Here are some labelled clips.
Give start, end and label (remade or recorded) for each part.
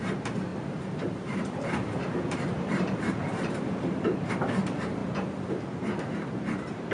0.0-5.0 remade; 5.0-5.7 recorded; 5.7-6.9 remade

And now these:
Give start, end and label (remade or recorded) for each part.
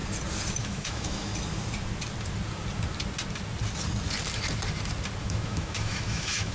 0.0-0.6 recorded; 0.6-1.3 remade; 1.3-5.2 recorded; 5.2-6.5 remade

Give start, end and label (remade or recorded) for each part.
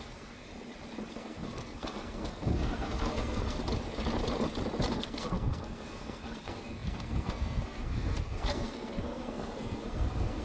0.0-0.5 remade; 0.5-1.1 recorded; 1.1-3.6 remade; 3.6-4.9 recorded; 4.9-10.4 remade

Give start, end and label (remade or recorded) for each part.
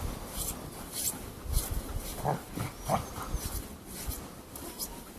0.0-1.9 recorded; 1.9-5.2 remade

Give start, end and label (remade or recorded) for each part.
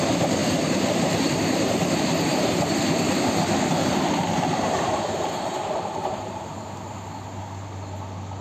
0.0-0.4 recorded; 0.4-2.0 remade; 2.0-3.7 recorded; 3.7-6.6 remade; 6.6-8.4 recorded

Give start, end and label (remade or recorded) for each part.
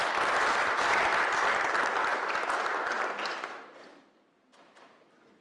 0.0-5.4 recorded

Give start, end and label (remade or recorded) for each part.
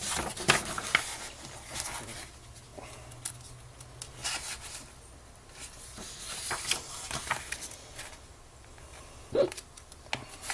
0.0-10.5 recorded